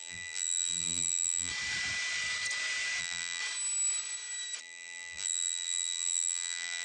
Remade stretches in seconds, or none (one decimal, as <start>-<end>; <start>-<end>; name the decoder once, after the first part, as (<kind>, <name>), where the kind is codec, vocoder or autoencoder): 0.0-1.5 (vocoder, BigVGAN v2); 3.0-3.4; 4.6-6.8